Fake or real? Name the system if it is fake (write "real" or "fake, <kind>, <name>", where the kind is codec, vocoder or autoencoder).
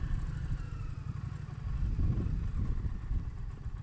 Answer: real